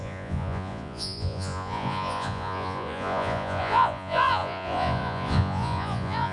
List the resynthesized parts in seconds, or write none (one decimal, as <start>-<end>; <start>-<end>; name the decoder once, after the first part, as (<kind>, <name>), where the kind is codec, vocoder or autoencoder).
0.0-6.3 (vocoder, Vocos)